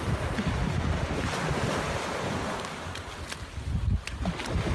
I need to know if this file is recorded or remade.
recorded